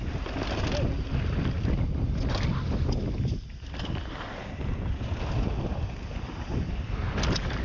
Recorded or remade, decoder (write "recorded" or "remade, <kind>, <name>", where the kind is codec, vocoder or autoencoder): recorded